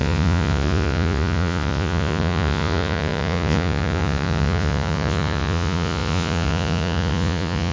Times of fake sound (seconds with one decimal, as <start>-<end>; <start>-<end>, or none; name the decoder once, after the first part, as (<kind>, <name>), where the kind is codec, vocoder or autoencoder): 0.0-7.7 (vocoder, Vocos)